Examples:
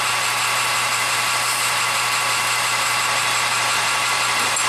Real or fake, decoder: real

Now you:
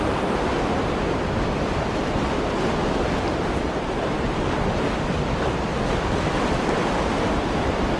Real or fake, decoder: fake, vocoder, BigVGAN v2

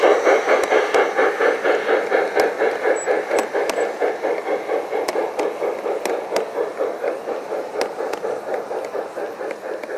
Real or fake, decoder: real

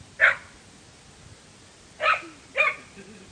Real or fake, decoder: real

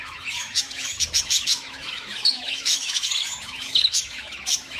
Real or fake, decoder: fake, autoencoder, DAC-VAE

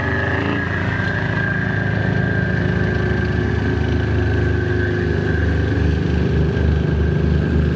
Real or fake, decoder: real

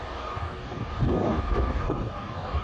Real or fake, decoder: fake, codec, DAC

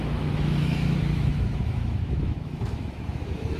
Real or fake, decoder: fake, autoencoder, DAC-VAE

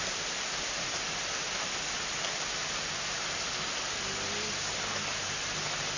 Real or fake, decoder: real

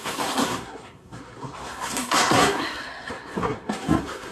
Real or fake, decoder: fake, codec, SNAC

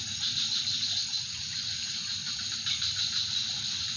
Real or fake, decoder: real